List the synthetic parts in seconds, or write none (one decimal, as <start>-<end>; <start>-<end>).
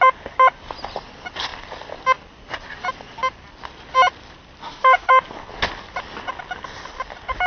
4.6-5.1